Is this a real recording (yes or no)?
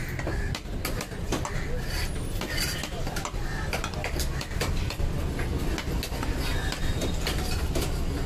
yes